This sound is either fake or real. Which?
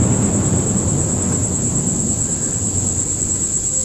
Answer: real